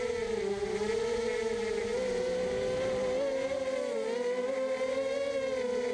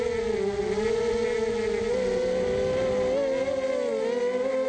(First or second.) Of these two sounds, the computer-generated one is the first